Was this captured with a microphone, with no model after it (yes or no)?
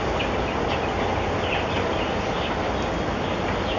yes